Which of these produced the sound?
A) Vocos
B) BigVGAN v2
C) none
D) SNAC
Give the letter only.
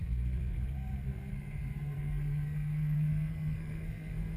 D